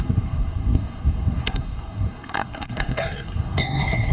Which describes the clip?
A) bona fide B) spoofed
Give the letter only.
B